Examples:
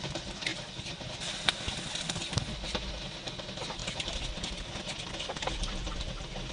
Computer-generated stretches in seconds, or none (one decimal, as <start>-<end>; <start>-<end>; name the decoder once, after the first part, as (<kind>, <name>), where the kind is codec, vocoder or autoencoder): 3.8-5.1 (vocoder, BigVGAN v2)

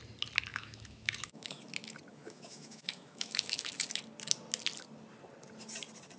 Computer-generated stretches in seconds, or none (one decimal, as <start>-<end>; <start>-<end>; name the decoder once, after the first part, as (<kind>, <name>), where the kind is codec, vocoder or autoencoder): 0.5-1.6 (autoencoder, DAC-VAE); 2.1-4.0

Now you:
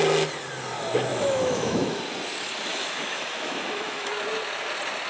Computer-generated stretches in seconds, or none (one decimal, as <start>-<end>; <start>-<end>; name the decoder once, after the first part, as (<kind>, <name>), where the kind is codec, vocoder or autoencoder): 1.1-2.0 (autoencoder, DAC-VAE); 2.7-4.1